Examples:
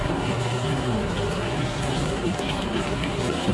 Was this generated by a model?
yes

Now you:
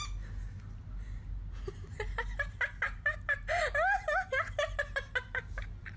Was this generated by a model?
no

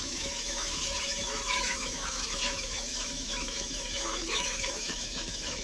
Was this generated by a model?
yes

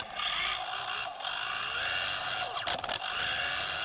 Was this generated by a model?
no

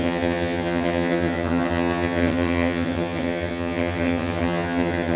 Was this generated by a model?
yes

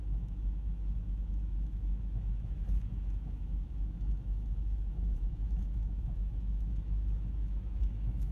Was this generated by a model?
yes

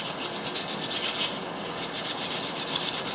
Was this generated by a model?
no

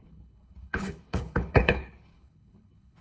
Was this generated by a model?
yes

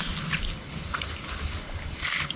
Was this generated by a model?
no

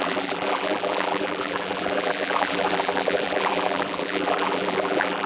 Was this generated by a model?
yes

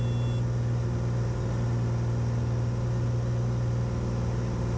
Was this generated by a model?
no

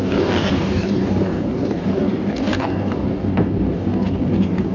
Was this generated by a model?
yes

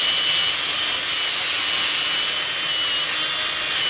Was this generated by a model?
no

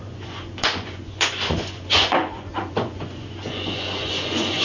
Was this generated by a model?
yes